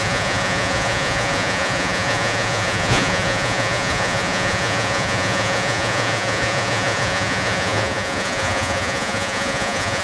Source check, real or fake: fake